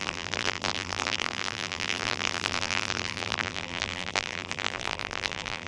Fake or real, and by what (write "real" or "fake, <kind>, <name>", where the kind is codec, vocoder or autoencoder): fake, vocoder, BigVGAN v2